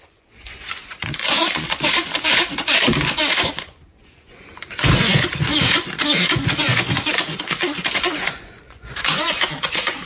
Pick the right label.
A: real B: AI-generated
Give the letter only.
B